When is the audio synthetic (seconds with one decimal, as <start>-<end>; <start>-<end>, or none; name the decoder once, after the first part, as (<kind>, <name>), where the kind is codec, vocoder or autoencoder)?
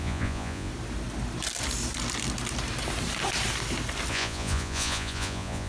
0.0-0.7 (vocoder, Vocos); 4.1-5.7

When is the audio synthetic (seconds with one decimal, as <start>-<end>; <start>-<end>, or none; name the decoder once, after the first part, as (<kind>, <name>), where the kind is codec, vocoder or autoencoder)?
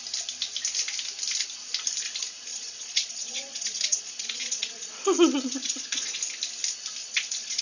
2.5-6.2 (vocoder, Vocos); 7.0-7.6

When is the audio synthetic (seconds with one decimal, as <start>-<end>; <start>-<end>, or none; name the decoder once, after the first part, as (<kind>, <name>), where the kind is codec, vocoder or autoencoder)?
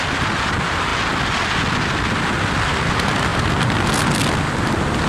none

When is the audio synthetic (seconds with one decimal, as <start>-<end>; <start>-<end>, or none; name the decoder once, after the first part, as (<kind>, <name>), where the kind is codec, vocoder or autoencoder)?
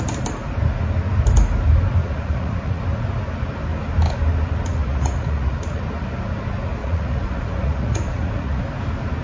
2.0-2.8 (vocoder, Vocos); 4.7-5.8; 6.8-8.6